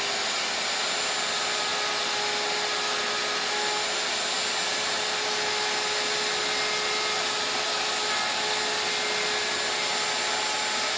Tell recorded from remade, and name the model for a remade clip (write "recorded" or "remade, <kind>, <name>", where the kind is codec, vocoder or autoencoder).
recorded